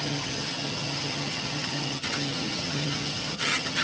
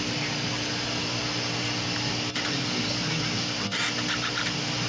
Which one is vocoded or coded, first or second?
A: first